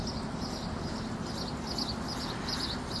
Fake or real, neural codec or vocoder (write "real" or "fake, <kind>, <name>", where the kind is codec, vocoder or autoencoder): real